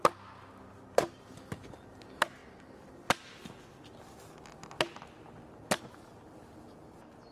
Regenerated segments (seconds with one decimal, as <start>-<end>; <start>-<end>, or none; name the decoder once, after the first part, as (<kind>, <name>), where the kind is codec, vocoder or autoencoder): none